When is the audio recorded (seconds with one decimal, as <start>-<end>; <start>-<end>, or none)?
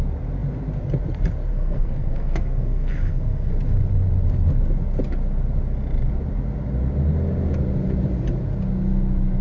0.0-1.5; 3.5-9.4